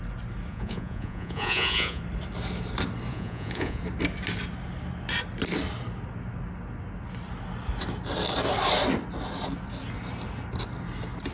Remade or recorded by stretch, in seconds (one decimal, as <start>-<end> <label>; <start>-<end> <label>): 0.0-0.5 recorded; 0.5-2.0 remade; 2.0-3.1 recorded; 3.1-3.8 remade; 3.8-11.3 recorded